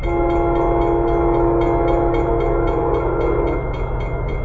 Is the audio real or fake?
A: real